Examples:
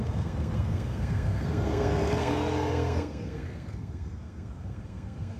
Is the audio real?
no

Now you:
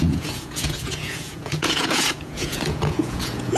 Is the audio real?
no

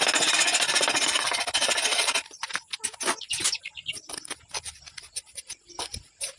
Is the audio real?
yes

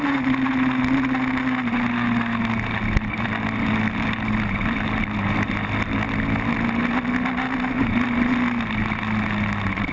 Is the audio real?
yes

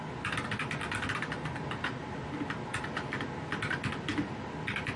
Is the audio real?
yes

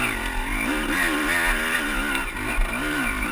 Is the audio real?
yes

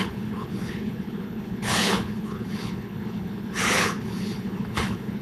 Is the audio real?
no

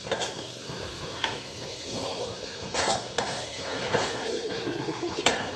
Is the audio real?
no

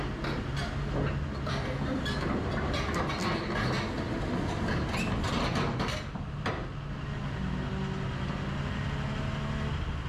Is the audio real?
yes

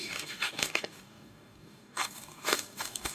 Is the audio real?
no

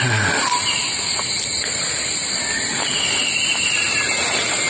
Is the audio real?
yes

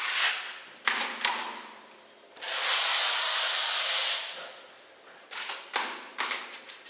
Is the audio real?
yes